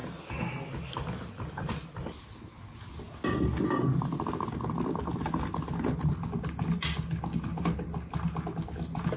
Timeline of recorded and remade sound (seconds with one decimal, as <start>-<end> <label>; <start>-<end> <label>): 0.0-9.2 recorded